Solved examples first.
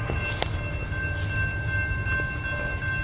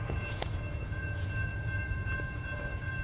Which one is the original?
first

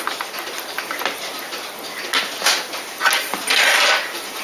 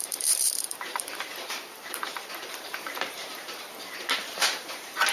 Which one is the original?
first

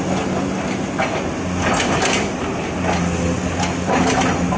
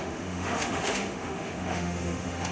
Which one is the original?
first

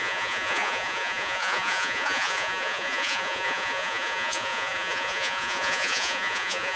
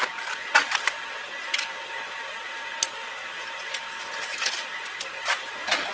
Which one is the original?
second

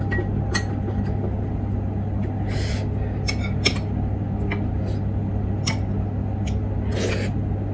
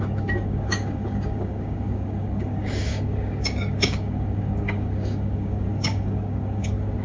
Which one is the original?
first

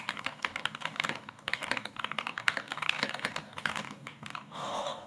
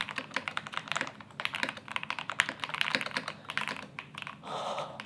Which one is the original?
second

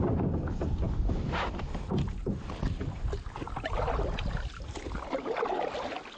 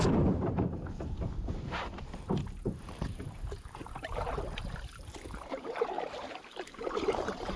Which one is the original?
first